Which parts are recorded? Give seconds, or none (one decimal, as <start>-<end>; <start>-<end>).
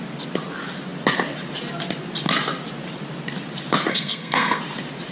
0.0-3.9; 4.6-5.1